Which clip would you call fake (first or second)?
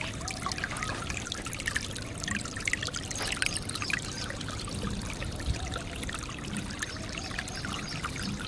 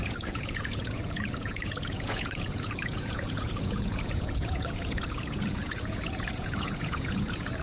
second